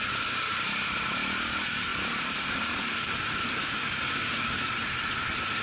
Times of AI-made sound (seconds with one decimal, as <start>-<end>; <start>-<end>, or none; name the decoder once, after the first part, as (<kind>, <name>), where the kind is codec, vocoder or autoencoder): 3.6-4.6 (codec, DAC)